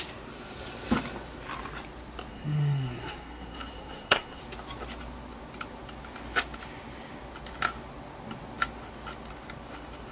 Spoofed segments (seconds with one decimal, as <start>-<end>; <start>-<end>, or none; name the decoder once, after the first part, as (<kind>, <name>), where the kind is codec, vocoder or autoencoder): 2.3-4.4 (codec, SNAC)